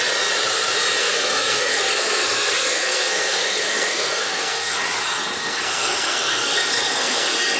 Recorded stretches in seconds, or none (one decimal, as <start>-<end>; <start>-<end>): 0.0-1.0; 4.8-5.4